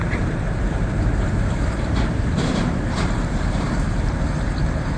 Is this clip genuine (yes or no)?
no